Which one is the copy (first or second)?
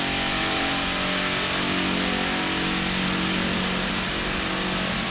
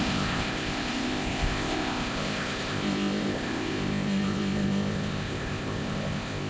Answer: second